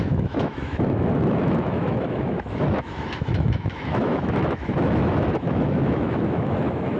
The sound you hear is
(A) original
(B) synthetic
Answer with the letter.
B